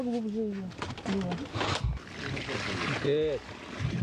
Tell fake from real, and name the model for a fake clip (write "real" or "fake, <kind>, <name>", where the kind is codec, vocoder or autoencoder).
real